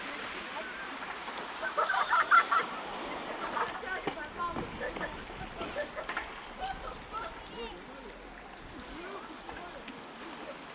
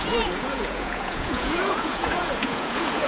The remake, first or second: second